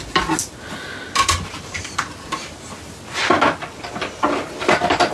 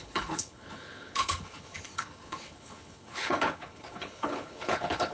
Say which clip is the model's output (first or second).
second